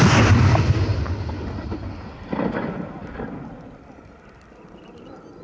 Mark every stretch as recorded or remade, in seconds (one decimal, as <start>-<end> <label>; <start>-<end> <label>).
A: 0.0-5.4 recorded